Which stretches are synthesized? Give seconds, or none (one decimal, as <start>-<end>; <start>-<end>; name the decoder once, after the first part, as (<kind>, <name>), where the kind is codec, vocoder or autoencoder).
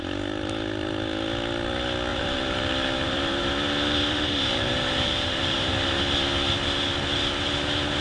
2.1-5.7 (vocoder, BigVGAN v2)